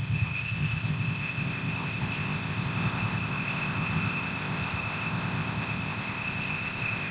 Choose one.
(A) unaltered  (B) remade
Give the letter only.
B